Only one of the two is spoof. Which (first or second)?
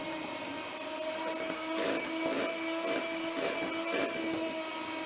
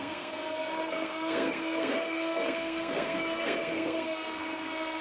second